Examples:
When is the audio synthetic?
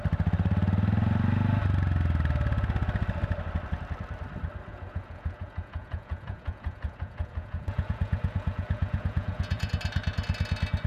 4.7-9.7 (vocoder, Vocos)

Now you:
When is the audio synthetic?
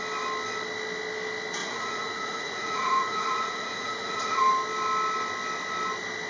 1.6-4.4 (vocoder, Vocos)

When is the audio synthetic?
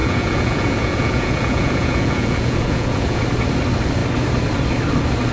0.0-3.2 (vocoder, Vocos)